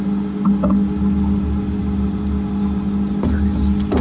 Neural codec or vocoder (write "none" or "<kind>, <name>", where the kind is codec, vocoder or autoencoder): none